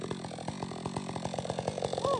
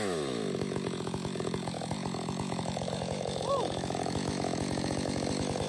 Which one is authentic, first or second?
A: first